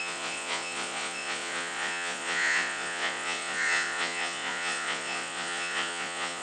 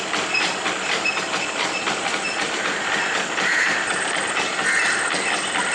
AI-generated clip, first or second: first